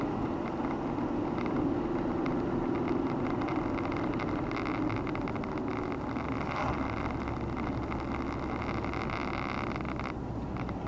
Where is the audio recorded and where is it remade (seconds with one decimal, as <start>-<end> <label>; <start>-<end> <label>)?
0.0-10.9 recorded